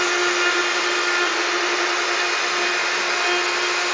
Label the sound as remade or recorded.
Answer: recorded